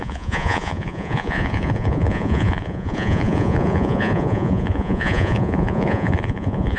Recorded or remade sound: remade